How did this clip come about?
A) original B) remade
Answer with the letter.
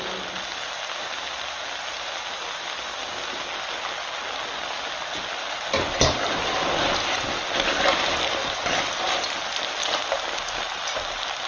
A